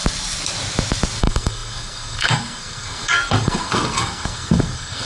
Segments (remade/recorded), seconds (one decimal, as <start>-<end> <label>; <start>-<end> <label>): 0.0-1.2 recorded; 1.2-5.0 remade